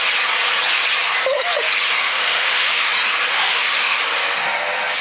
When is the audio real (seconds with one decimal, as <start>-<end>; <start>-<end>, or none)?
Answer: 0.0-2.0; 2.9-3.3; 4.0-5.0